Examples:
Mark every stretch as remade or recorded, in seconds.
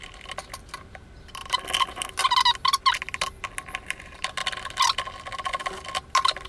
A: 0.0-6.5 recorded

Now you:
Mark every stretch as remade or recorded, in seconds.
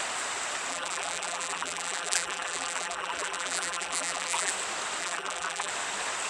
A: 0.0-0.7 recorded; 0.7-4.5 remade; 4.5-5.0 recorded; 5.0-5.7 remade; 5.7-6.3 recorded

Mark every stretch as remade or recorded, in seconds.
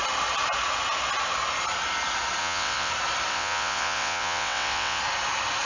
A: 0.0-2.4 recorded; 2.4-2.9 remade; 2.9-3.3 recorded; 3.3-5.0 remade; 5.0-5.7 recorded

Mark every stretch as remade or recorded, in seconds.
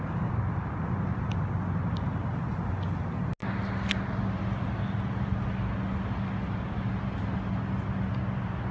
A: 0.0-8.7 recorded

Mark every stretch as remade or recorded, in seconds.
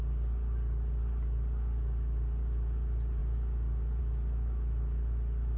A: 0.0-5.6 recorded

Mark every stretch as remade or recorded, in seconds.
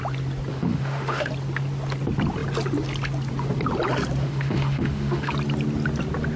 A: 0.0-0.5 recorded; 0.5-1.3 remade; 1.3-4.2 recorded; 4.2-5.3 remade; 5.3-6.4 recorded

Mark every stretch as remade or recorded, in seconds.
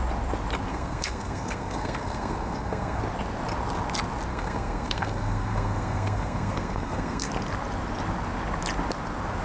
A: 0.0-0.7 recorded; 0.7-3.0 remade; 3.0-4.3 recorded; 4.3-7.3 remade; 7.3-9.4 recorded